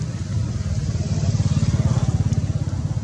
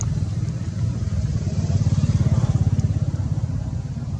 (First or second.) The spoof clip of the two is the second